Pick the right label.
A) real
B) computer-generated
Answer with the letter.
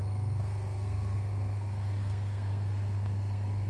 B